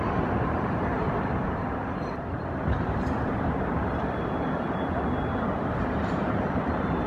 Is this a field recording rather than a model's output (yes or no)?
no